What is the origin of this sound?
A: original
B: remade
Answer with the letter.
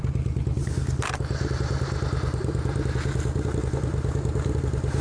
A